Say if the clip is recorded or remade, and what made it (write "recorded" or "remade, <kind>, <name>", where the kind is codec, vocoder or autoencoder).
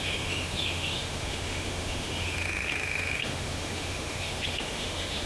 remade, autoencoder, DAC-VAE